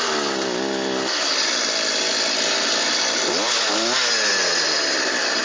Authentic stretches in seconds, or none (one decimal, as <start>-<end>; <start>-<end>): 0.0-5.4